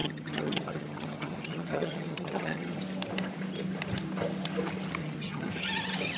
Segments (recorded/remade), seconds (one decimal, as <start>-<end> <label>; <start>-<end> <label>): 0.0-2.8 remade; 2.8-5.0 recorded; 5.0-5.5 remade; 5.5-6.2 recorded